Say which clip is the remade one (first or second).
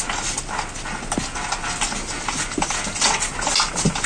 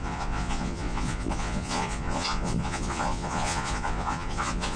second